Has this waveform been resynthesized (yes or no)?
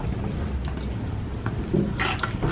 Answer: no